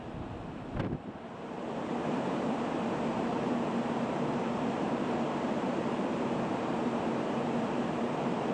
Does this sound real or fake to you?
fake